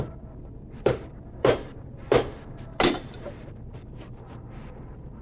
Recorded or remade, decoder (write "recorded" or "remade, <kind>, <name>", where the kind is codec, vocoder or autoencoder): remade, vocoder, BigVGAN v2